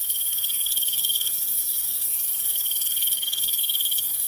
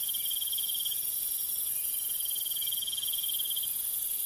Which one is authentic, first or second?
second